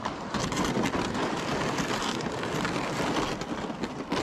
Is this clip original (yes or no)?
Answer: yes